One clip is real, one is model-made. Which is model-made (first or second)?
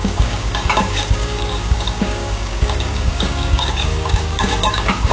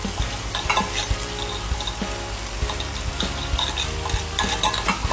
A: first